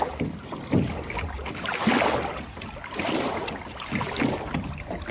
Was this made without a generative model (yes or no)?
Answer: yes